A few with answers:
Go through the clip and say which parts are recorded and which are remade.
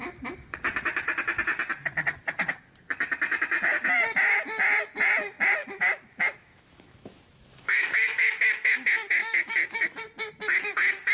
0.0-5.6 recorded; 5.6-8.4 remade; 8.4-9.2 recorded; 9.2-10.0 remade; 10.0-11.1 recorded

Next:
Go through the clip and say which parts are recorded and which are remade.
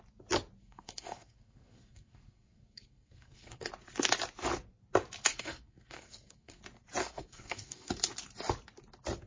0.0-0.6 recorded; 0.6-3.7 remade; 3.7-5.3 recorded; 5.3-6.6 remade; 6.6-7.0 recorded; 7.0-7.9 remade; 7.9-9.3 recorded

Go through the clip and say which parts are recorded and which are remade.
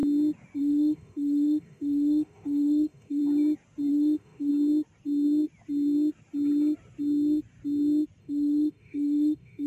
0.0-0.6 recorded; 0.6-3.2 remade; 3.2-3.9 recorded; 3.9-4.5 remade; 4.5-8.2 recorded; 8.2-9.7 remade